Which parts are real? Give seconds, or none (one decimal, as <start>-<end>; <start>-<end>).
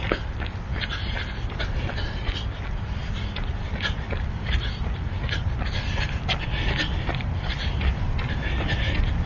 0.0-9.3